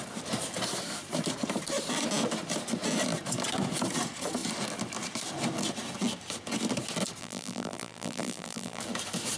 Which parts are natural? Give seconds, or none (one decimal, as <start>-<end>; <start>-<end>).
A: 0.0-7.2; 8.8-9.4